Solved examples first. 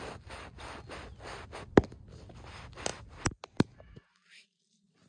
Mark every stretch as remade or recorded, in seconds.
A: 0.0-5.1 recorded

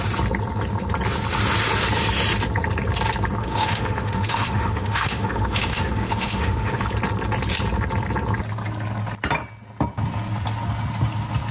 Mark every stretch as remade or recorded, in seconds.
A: 0.0-3.4 recorded; 3.4-6.8 remade; 6.8-11.5 recorded

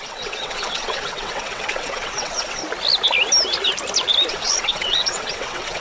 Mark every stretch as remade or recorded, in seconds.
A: 0.0-2.6 remade; 2.6-4.3 recorded; 4.3-5.8 remade

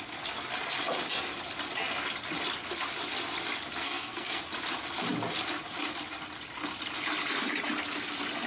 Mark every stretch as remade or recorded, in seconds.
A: 0.0-3.8 recorded; 3.8-4.4 remade; 4.4-8.5 recorded